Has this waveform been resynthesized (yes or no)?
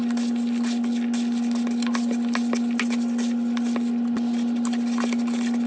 no